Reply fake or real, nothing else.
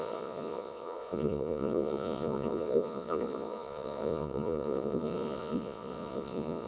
fake